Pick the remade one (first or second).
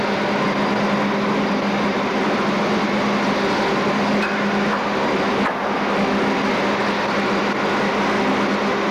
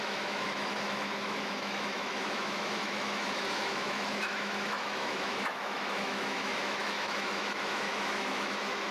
second